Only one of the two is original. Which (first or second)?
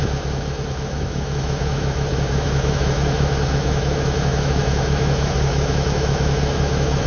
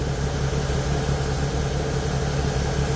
second